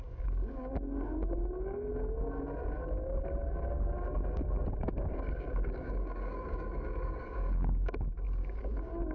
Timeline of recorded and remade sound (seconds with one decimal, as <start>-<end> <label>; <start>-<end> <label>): 0.0-1.9 remade; 1.9-4.8 recorded; 4.8-9.1 remade